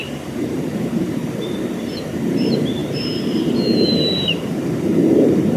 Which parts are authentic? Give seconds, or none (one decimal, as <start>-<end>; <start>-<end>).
1.2-1.8